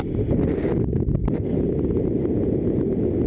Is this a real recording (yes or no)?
yes